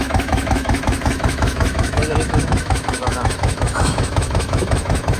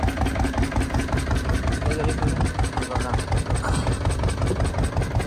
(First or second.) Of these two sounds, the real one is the second